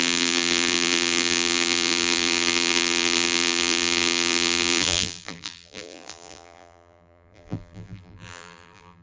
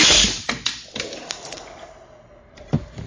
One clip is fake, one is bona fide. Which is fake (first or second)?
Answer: first